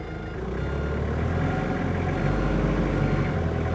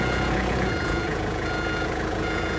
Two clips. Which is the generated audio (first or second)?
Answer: second